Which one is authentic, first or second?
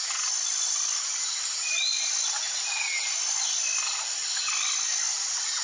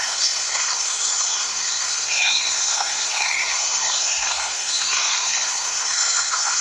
first